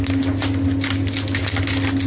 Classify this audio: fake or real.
real